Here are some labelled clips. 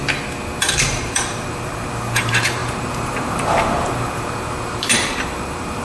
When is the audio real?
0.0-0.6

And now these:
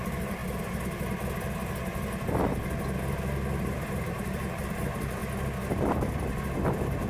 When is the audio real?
0.4-3.6; 5.2-7.1

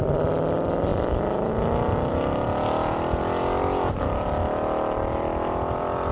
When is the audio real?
0.0-0.9; 1.5-2.1

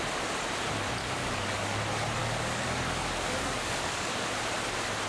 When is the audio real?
0.0-1.0; 1.8-2.2; 4.3-5.1

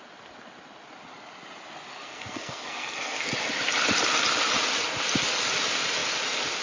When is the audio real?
0.0-1.9; 3.3-6.6

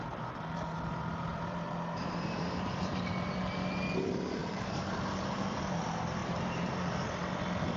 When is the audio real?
0.0-1.3; 3.0-4.4; 5.0-6.2; 6.8-7.8

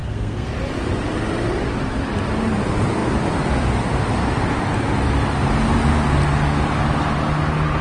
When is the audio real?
0.5-7.8

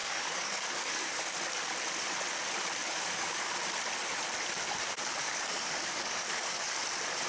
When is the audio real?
1.4-2.8; 3.5-5.2; 6.8-7.3